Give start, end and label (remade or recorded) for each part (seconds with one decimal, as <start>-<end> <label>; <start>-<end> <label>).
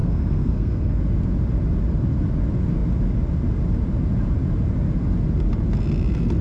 0.0-1.0 remade; 1.0-6.4 recorded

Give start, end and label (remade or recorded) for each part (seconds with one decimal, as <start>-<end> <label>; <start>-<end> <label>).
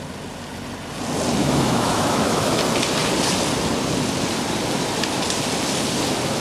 0.0-1.4 recorded; 1.4-2.6 remade; 2.6-6.4 recorded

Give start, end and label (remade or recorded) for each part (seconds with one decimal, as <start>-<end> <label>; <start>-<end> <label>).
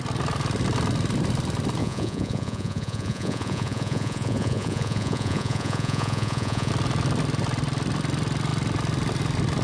0.0-1.8 recorded; 1.8-6.7 remade; 6.7-9.6 recorded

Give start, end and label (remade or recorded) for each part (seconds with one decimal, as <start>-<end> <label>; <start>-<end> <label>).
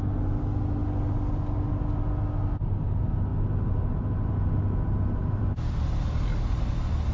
0.0-7.1 recorded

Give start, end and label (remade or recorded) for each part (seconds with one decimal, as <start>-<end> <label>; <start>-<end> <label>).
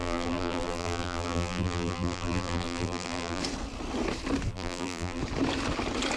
0.0-3.4 remade; 3.4-4.5 recorded; 4.5-5.2 remade; 5.2-6.2 recorded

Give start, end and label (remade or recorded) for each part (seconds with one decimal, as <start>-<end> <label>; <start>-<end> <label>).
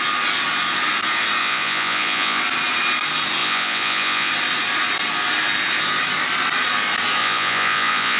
0.0-1.4 recorded; 1.4-2.4 remade; 2.4-3.4 recorded; 3.4-4.3 remade; 4.3-7.2 recorded; 7.2-8.2 remade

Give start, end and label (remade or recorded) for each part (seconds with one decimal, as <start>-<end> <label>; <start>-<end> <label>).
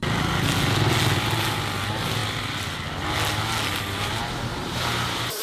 0.0-4.5 recorded; 4.5-5.4 remade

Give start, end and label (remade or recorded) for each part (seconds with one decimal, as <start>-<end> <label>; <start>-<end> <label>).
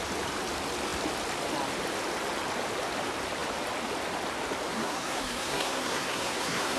0.0-4.7 recorded; 4.7-6.8 remade